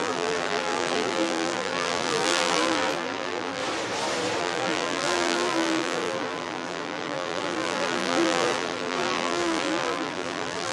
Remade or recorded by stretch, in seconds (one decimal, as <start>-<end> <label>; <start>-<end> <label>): 0.0-3.6 remade; 3.6-4.4 recorded; 4.4-10.7 remade